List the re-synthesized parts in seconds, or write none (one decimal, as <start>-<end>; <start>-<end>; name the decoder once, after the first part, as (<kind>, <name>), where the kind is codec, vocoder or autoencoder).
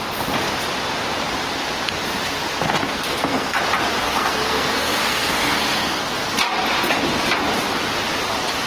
2.8-3.6 (codec, SNAC); 4.0-6.2